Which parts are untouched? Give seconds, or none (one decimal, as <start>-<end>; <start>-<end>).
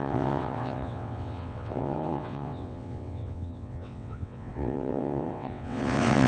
none